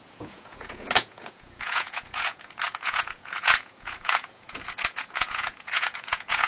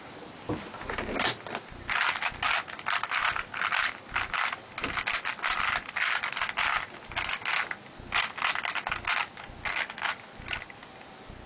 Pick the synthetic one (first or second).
first